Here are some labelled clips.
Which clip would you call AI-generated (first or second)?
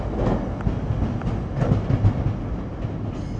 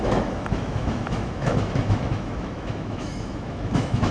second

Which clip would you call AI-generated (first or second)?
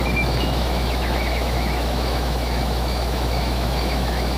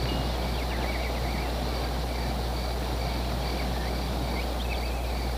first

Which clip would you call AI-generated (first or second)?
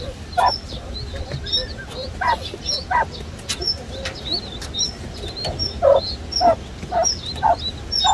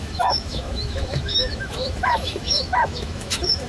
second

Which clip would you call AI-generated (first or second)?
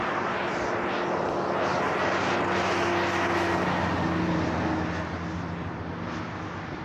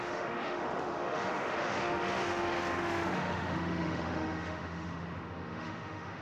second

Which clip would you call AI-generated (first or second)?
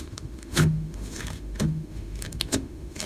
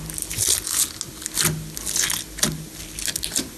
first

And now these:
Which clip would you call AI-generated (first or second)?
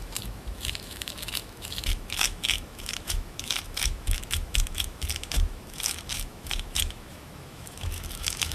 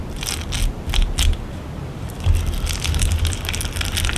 first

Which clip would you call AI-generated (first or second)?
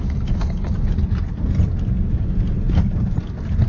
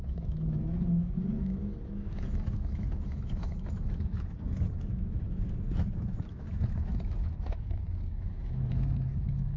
second